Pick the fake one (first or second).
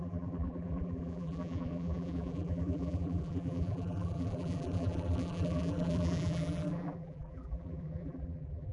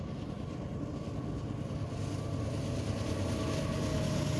first